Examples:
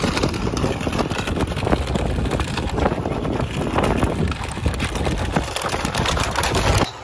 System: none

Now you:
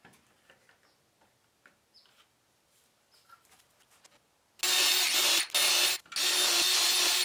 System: none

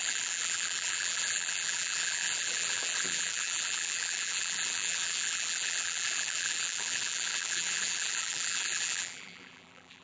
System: vocoder, BigVGAN v2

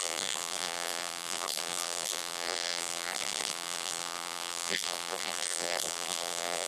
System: vocoder, BigVGAN v2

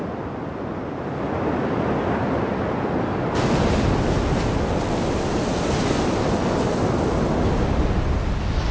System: none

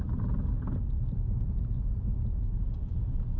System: none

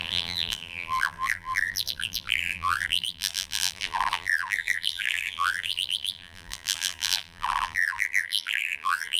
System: vocoder, BigVGAN v2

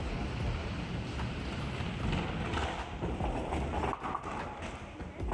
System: none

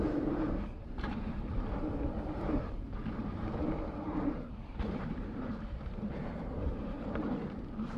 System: vocoder, BigVGAN v2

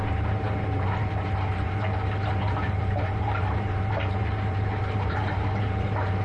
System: vocoder, BigVGAN v2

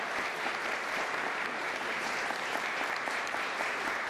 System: vocoder, BigVGAN v2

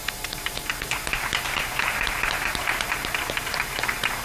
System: vocoder, BigVGAN v2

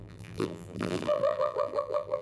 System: vocoder, BigVGAN v2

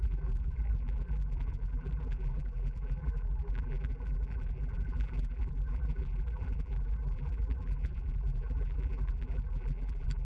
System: vocoder, BigVGAN v2